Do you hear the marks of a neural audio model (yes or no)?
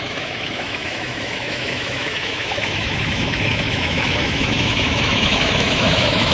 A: yes